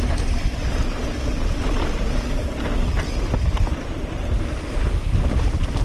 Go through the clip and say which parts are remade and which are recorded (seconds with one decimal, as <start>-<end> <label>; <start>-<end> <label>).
0.0-0.6 remade; 0.6-4.1 recorded; 4.1-5.8 remade